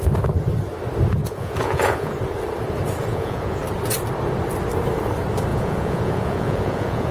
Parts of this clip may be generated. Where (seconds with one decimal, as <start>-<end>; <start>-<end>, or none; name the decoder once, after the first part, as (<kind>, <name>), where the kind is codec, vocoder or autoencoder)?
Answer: 1.2-2.1 (vocoder, Vocos); 3.1-3.6; 5.5-7.1